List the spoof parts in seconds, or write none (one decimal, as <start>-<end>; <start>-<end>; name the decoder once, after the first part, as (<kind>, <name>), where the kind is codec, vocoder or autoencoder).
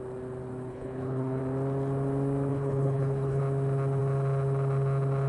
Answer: 0.7-1.4 (codec, HILCodec); 2.5-3.4